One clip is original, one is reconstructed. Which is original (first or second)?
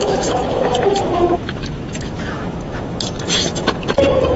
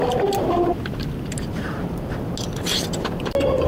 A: second